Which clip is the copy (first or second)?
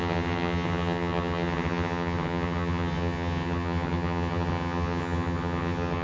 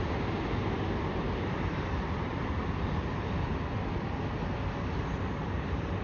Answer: first